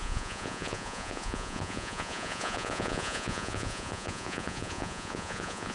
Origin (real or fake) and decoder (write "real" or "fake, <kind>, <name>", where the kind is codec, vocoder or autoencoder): fake, vocoder, Vocos